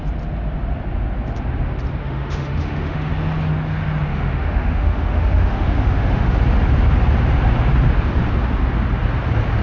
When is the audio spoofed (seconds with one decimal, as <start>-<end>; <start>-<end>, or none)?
2.0-3.1; 4.1-6.4